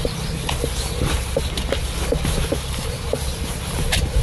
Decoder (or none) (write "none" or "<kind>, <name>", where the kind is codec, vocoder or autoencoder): none